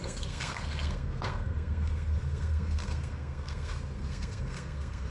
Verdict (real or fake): fake